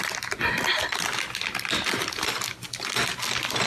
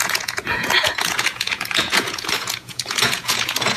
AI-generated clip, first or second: second